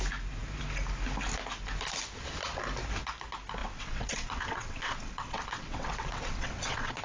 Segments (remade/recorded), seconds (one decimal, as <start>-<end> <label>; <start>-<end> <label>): 0.0-3.6 recorded; 3.6-7.0 remade